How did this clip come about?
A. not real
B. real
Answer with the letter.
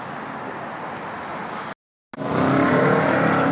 B